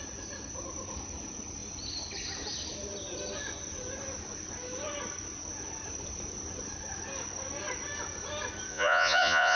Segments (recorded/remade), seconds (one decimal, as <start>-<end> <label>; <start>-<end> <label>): 0.0-8.7 recorded; 8.7-9.6 remade